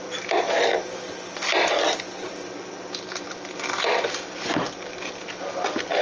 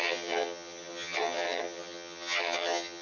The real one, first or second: first